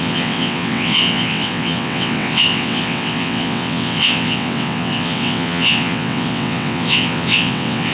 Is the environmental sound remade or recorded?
remade